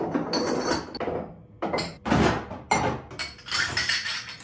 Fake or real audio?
real